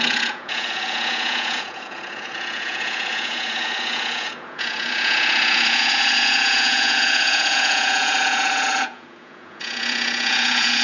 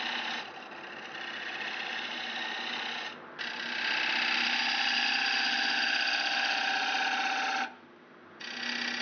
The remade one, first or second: first